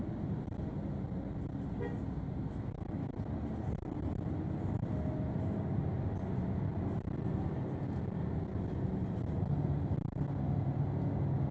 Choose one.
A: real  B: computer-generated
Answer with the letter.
A